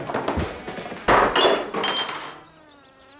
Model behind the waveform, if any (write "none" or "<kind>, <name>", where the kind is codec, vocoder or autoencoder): none